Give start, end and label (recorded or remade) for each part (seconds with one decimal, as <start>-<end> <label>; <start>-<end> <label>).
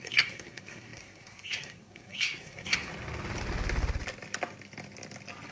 0.0-2.9 remade; 2.9-5.5 recorded